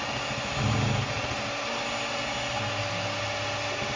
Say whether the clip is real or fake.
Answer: real